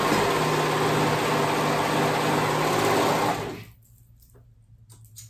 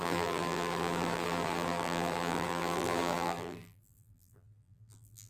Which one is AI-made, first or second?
second